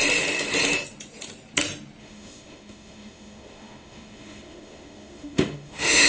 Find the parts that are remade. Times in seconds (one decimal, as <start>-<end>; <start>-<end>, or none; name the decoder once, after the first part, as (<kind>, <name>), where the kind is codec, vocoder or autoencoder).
2.0-6.1 (autoencoder, DAC-VAE)